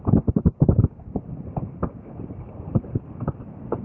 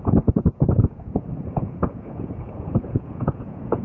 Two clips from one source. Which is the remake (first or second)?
second